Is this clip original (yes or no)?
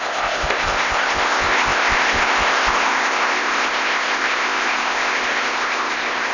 no